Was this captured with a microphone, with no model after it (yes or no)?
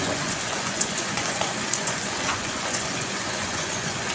no